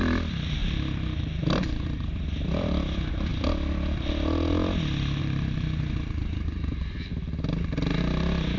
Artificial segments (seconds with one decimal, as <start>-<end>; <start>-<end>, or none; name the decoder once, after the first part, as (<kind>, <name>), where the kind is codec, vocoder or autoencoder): 0.0-0.6 (vocoder, BigVGAN v2); 1.6-3.3; 5.2-7.1; 8.0-8.6